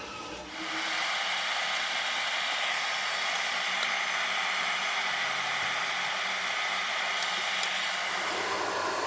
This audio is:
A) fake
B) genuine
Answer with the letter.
B